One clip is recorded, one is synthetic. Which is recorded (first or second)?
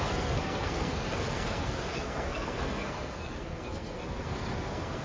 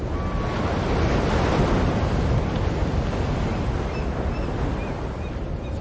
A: second